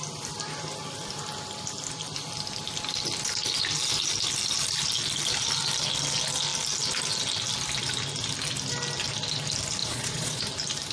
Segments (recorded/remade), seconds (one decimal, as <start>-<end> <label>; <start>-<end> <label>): 0.0-9.8 recorded; 9.8-10.4 remade; 10.4-10.9 recorded